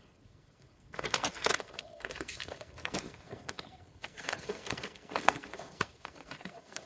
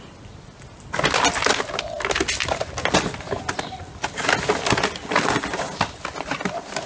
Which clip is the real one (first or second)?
second